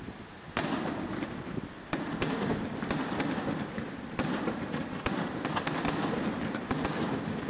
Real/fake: real